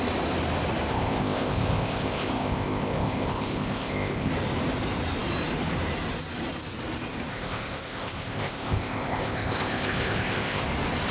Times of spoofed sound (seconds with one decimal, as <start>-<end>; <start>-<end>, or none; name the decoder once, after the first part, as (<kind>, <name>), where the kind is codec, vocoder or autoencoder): 0.9-4.3 (codec, ZipCodec); 7.3-10.6